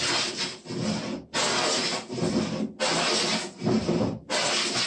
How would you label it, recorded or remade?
recorded